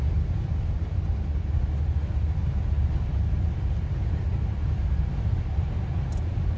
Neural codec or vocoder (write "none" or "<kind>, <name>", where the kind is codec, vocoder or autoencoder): none